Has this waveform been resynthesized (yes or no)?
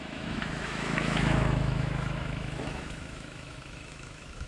yes